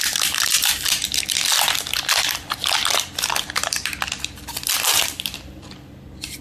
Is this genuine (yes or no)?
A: no